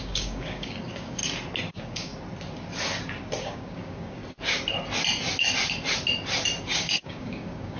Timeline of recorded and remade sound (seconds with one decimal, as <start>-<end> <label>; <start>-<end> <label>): 0.0-1.2 remade; 1.2-1.7 recorded; 1.7-2.1 remade; 2.1-3.4 recorded; 3.4-4.2 remade; 4.2-6.6 recorded; 6.6-7.8 remade